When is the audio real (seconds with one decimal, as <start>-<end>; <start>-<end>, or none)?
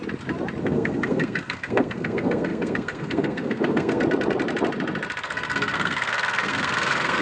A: 0.0-0.6; 4.0-5.2